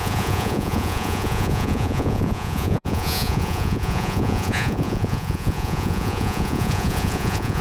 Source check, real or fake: fake